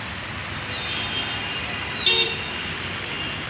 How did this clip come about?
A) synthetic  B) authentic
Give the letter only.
B